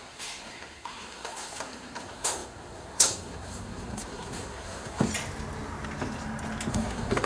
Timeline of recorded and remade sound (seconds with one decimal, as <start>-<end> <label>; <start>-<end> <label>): 0.0-5.1 remade; 5.1-6.7 recorded; 6.7-7.3 remade